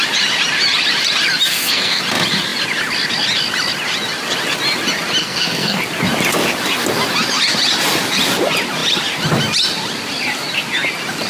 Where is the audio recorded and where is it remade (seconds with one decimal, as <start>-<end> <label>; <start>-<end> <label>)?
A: 0.0-1.5 recorded; 1.5-2.0 remade; 2.0-5.2 recorded; 5.2-5.8 remade; 5.8-11.3 recorded